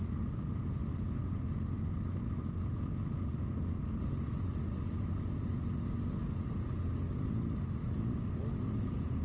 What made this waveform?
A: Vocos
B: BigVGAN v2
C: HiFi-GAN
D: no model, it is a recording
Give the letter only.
D